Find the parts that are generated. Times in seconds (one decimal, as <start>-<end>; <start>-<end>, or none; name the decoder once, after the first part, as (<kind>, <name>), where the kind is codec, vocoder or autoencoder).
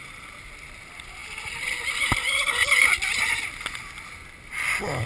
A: none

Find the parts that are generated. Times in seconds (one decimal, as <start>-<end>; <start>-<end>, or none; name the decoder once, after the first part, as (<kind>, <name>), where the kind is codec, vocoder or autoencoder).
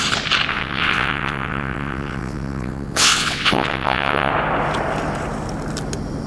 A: 0.5-4.3 (vocoder, WaveNeXt)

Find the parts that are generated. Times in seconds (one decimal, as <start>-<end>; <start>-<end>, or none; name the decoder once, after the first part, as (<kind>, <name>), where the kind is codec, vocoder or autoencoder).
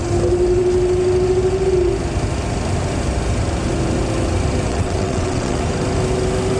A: 4.7-5.6 (vocoder, WaveNeXt)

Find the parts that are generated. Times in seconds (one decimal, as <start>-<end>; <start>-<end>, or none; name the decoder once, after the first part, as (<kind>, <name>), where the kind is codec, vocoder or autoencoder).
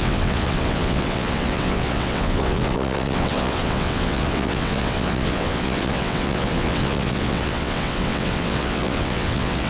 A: 0.0-9.7 (vocoder, WaveNeXt)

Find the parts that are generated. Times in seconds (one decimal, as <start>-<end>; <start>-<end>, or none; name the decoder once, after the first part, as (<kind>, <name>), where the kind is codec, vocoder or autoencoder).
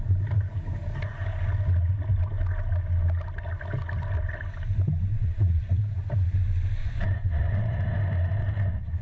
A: 5.1-5.8 (vocoder, WaveNeXt); 6.8-7.8; 8.4-9.0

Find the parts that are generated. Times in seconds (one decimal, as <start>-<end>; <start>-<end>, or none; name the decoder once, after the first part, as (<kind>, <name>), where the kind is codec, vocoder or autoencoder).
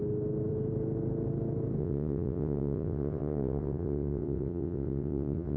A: 1.8-5.6 (vocoder, WaveNeXt)